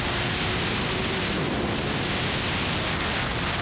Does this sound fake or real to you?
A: real